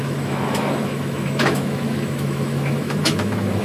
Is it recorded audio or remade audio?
remade